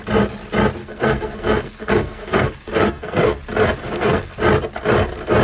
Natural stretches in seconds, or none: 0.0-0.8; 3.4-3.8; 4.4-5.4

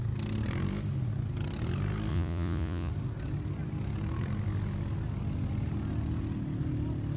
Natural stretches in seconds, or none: 0.0-2.1; 2.9-7.2